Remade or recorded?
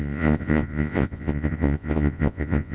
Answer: remade